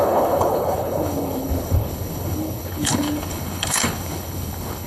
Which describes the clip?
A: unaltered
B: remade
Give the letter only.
B